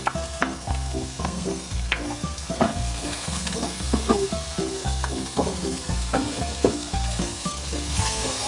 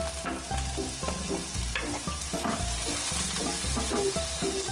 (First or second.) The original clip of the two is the second